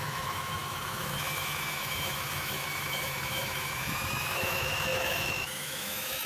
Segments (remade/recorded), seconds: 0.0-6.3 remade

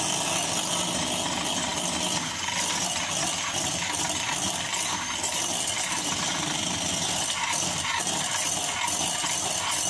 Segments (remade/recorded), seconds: 0.0-9.9 recorded

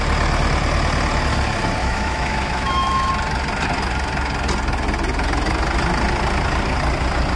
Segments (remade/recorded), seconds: 0.0-1.8 recorded; 1.8-3.1 remade; 3.1-7.4 recorded

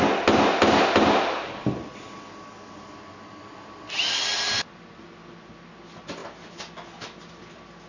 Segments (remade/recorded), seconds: 0.0-7.9 recorded